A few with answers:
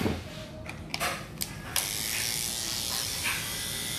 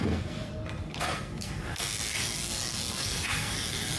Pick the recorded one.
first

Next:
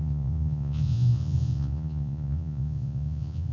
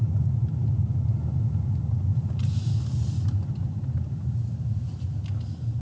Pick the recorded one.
second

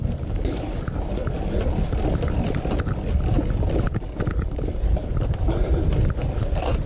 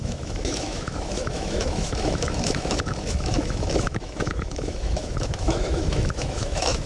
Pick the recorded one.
first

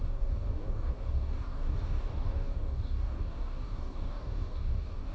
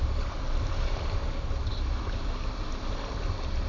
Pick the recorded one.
second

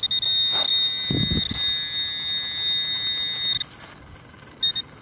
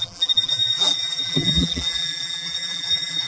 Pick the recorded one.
first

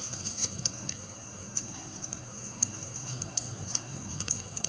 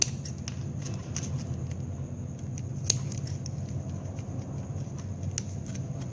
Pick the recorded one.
second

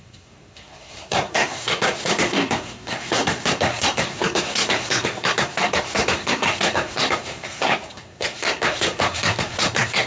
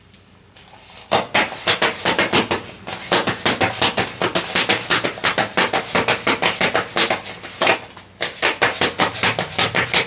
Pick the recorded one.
second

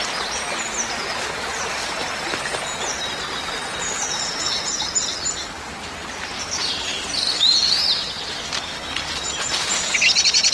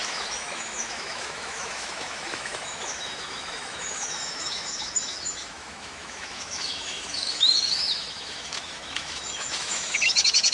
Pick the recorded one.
first